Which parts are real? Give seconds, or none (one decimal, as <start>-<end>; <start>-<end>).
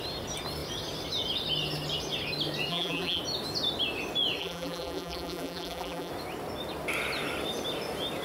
0.0-2.7; 3.2-4.4; 6.1-8.2